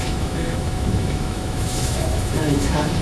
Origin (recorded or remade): remade